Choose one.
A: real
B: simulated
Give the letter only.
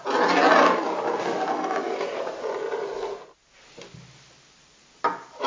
A